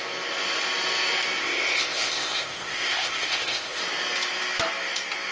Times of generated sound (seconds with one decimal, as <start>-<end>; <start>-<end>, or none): 1.4-3.8